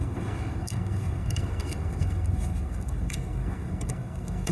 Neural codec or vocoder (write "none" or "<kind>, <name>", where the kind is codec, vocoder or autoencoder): codec, SNAC